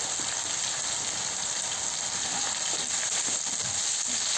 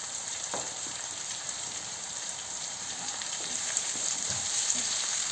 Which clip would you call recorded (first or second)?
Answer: first